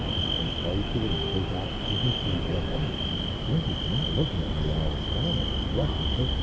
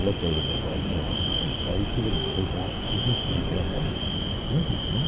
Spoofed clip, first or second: second